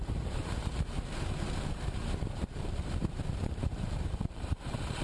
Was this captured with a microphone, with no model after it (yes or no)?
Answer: no